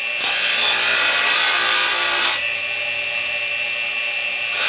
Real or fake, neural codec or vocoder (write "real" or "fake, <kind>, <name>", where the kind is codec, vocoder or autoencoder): real